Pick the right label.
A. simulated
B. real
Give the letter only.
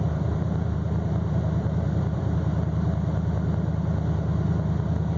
B